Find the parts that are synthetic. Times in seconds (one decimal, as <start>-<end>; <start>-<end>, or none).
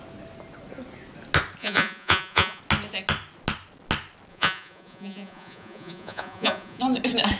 1.6-2.6; 4.3-6.8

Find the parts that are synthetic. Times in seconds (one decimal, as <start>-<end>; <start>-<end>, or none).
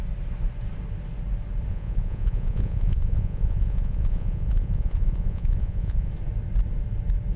1.7-6.1